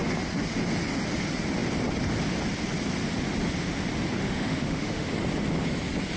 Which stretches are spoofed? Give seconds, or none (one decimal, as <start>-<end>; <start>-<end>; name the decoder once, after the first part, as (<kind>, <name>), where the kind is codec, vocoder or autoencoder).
4.2-5.1 (autoencoder, DAC-VAE)